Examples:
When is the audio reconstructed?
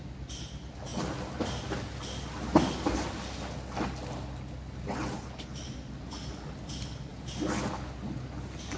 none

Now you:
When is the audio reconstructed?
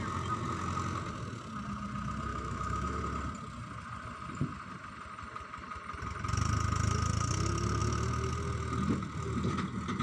2.3-3.0 (autoencoder, DAC-VAE)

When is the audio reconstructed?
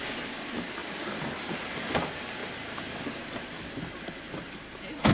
none